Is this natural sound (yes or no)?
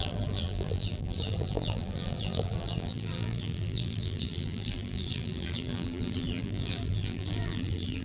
no